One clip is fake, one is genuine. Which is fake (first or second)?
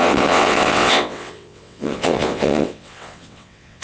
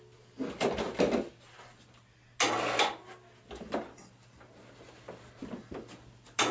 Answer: first